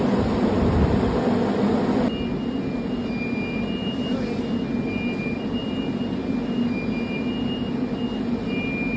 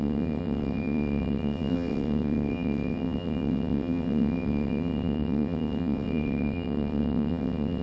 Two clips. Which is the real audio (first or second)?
first